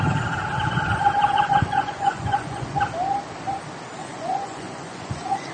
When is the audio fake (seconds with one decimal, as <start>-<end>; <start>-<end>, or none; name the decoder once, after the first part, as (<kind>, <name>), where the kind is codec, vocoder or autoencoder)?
1.2-2.8 (vocoder, Vocos); 4.0-5.5